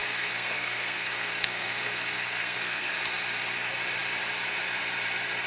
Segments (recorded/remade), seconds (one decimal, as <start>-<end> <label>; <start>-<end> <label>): 0.0-2.9 remade; 2.9-5.5 recorded